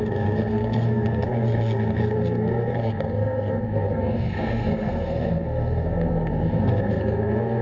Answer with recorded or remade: remade